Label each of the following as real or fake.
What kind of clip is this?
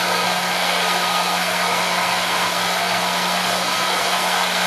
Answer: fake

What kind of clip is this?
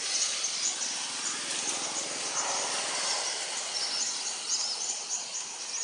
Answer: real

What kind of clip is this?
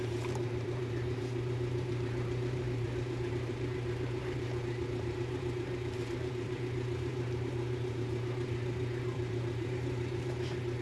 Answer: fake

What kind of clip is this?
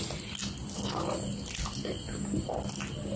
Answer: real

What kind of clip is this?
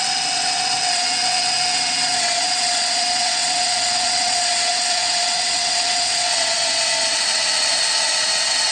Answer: fake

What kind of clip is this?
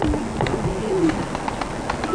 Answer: real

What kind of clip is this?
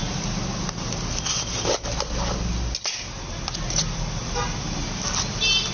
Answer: real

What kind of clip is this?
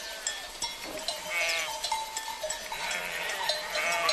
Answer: real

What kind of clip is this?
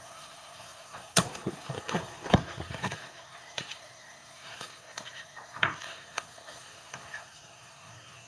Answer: fake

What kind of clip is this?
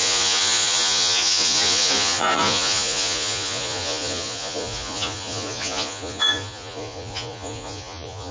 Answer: fake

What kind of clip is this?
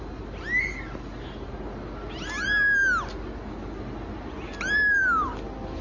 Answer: real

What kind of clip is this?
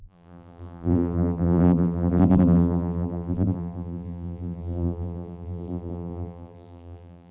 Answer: fake